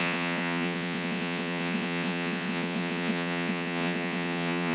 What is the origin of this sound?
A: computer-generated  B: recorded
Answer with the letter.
A